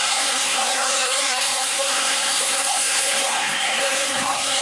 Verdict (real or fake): fake